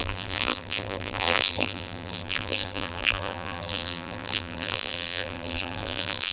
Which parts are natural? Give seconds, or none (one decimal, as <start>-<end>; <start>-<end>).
none